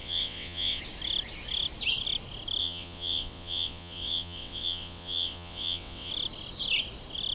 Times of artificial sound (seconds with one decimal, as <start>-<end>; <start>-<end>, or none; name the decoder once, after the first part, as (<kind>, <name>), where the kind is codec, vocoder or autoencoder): 0.0-0.8 (vocoder, WaveNeXt); 2.6-6.1